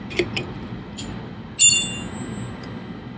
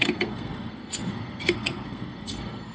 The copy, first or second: second